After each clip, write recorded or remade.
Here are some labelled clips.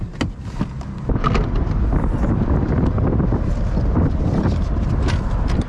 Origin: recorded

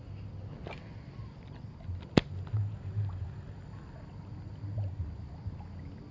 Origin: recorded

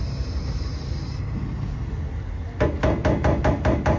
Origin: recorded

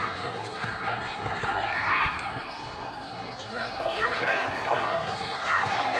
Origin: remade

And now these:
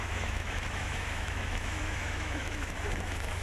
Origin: remade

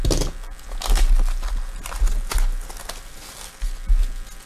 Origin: recorded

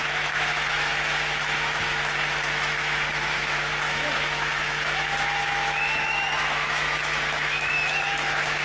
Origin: remade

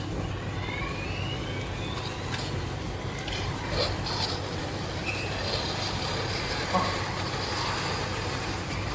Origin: recorded